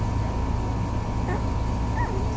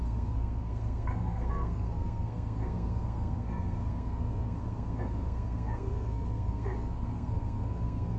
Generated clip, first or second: second